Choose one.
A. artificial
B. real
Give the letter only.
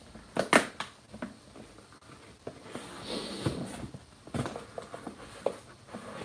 B